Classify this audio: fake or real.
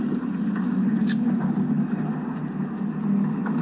real